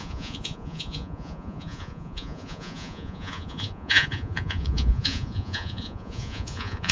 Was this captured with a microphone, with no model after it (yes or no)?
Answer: no